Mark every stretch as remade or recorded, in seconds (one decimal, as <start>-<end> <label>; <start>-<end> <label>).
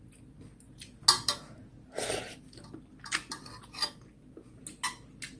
0.0-5.4 recorded